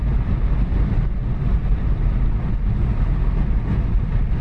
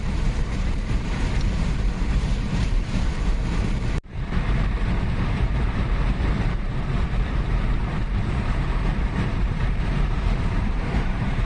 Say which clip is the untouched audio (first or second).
first